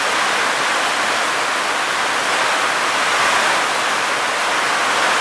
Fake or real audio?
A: real